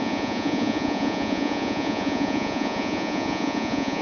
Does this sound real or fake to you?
fake